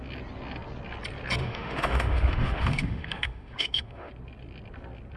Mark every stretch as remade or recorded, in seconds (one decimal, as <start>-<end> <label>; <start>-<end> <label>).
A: 0.0-1.4 recorded; 1.4-4.1 remade; 4.1-5.2 recorded